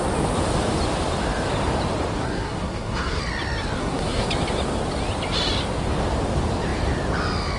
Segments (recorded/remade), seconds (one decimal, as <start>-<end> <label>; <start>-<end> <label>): 0.0-2.2 recorded; 2.2-3.2 remade; 3.2-3.8 recorded; 3.8-4.3 remade; 4.3-7.6 recorded